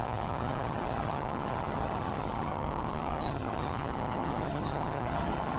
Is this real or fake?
fake